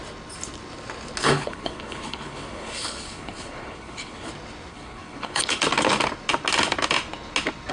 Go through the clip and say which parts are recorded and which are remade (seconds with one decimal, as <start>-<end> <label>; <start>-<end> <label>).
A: 0.0-1.2 recorded; 1.2-4.3 remade; 4.3-4.7 recorded; 4.7-5.6 remade; 5.6-7.7 recorded